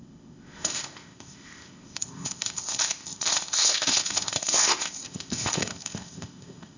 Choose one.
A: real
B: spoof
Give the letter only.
B